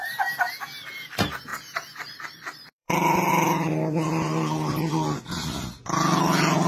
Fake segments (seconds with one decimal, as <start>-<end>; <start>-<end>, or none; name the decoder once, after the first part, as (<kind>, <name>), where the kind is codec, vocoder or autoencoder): 1.5-3.3 (vocoder, BigVGAN v2)